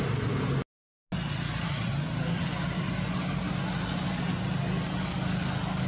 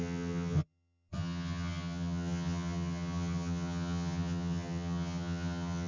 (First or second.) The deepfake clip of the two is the second